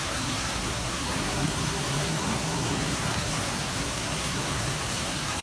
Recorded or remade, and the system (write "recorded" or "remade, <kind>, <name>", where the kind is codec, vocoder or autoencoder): remade, codec, SNAC